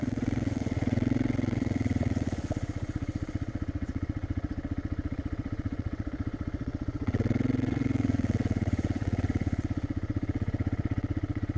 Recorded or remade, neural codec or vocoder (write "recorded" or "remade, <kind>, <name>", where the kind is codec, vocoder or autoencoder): remade, vocoder, WaveNeXt